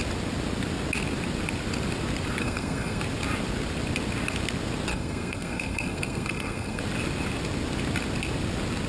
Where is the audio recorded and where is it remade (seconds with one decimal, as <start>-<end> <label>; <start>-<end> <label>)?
0.0-2.4 recorded; 2.4-3.0 remade; 3.0-4.9 recorded; 4.9-6.8 remade; 6.8-8.9 recorded